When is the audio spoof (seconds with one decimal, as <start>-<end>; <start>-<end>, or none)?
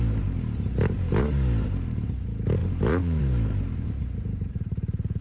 none